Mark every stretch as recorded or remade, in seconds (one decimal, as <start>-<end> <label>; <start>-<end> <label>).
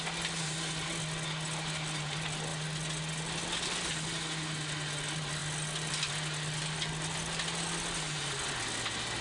0.0-9.2 recorded